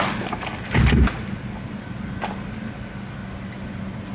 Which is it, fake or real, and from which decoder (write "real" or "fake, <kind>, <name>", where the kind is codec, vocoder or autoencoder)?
real